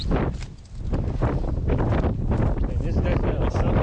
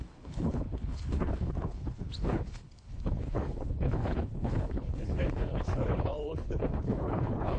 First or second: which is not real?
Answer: second